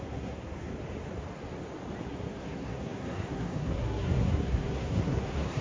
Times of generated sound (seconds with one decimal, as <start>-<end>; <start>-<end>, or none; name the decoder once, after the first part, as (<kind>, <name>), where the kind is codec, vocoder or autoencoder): 0.0-0.7 (codec, SNAC); 2.0-5.6